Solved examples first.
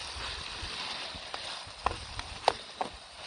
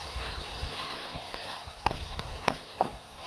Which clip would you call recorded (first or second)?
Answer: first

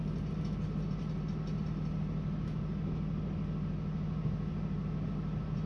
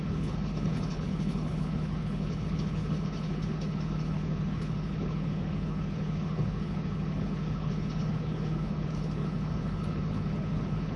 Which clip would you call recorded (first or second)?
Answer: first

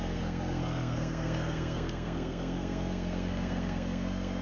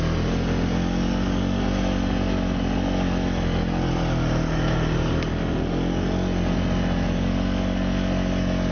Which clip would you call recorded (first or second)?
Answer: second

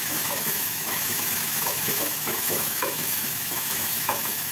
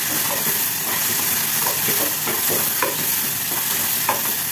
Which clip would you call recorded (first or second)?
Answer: second